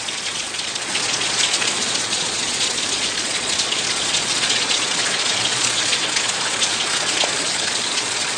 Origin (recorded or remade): remade